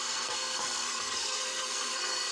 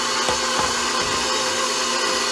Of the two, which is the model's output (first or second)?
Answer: first